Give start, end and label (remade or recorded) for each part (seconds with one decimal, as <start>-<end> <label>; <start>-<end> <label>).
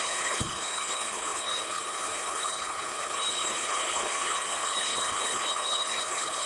0.0-6.5 remade